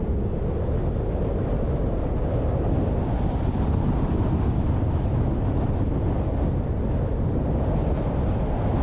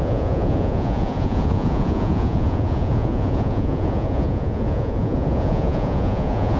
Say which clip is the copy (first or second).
second